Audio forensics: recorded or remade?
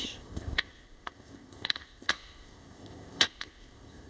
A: remade